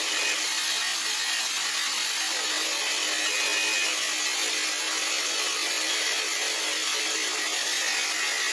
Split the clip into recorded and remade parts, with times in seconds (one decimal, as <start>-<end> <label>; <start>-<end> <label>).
0.0-8.5 recorded